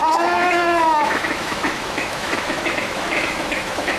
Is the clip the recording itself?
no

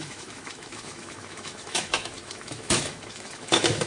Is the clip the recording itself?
no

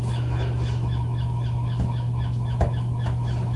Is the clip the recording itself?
no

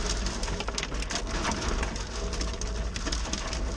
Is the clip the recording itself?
yes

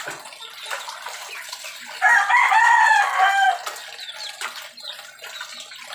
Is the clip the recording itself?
yes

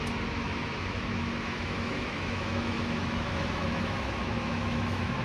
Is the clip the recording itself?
no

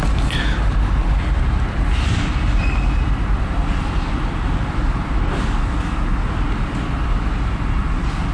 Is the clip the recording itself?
yes